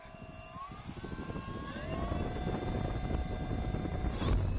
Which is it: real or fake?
real